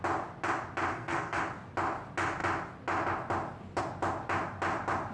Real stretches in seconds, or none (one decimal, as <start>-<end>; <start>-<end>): 0.0-0.9; 1.4-5.1